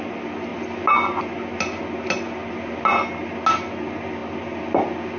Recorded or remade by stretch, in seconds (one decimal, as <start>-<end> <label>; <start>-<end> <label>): 0.0-5.2 recorded